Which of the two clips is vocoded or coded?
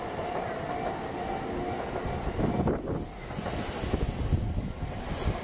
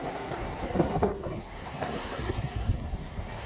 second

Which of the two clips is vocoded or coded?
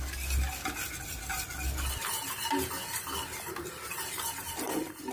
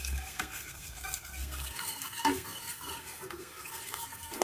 second